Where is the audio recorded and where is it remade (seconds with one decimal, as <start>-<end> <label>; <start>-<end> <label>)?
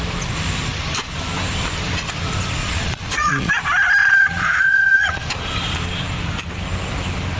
0.0-2.6 recorded; 2.6-3.5 remade; 3.5-4.0 recorded; 4.0-5.2 remade; 5.2-7.4 recorded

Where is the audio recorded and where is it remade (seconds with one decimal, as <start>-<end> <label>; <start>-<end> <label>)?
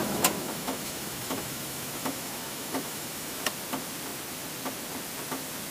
0.0-3.4 remade; 3.4-5.7 recorded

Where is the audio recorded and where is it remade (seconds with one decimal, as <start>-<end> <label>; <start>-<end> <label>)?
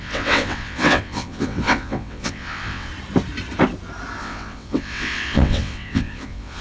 0.0-2.9 remade; 2.9-4.2 recorded; 4.2-6.6 remade